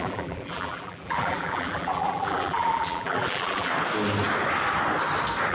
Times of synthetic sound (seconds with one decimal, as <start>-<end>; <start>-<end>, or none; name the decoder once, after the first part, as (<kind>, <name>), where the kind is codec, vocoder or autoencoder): 0.0-3.7 (vocoder, BigVGAN v2)